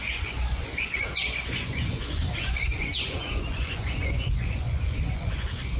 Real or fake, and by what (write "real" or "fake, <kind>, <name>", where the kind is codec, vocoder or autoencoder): fake, vocoder, Vocos